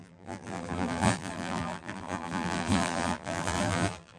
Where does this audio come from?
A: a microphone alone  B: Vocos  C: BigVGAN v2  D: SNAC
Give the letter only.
C